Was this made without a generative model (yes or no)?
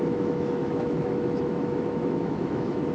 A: no